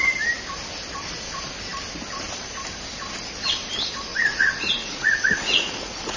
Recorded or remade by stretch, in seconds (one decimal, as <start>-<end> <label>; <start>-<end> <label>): 0.0-4.1 recorded; 4.1-6.2 remade